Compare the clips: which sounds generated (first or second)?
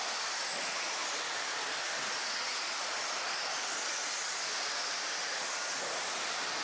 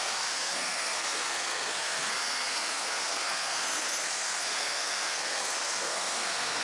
second